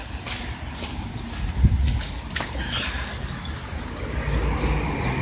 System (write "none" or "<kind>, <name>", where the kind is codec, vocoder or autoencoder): none